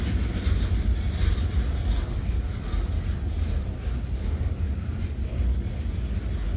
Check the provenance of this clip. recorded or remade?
recorded